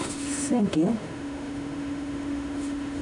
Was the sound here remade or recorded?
remade